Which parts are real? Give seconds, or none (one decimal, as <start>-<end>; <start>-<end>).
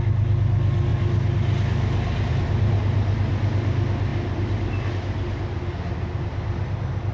0.0-7.1